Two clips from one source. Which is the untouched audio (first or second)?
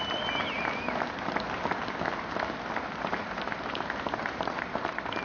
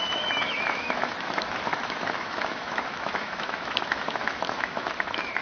first